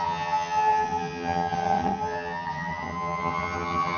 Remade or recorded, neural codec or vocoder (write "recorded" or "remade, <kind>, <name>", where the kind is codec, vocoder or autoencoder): remade, vocoder, HiFi-GAN